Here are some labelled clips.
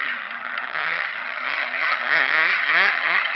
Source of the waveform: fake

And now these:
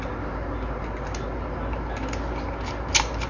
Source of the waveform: real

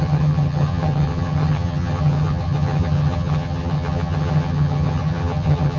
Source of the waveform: fake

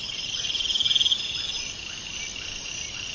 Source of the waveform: real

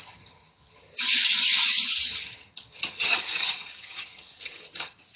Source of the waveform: fake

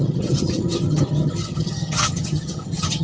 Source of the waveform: fake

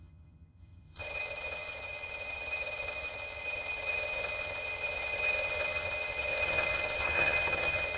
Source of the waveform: fake